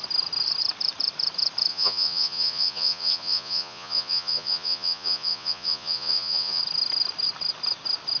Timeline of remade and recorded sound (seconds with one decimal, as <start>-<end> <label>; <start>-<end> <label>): 0.0-1.7 recorded; 1.7-6.6 remade; 6.6-8.2 recorded